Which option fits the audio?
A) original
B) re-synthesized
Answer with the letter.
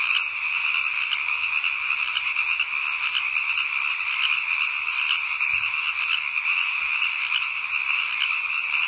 A